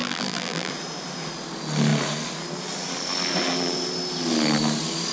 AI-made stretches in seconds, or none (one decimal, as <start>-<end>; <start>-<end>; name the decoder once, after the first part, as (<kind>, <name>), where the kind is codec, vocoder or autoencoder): 0.0-0.7 (vocoder, BigVGAN v2)